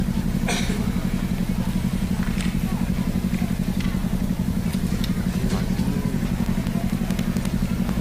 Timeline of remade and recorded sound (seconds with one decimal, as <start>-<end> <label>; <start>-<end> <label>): 0.0-4.0 recorded; 4.0-5.1 remade; 5.1-8.0 recorded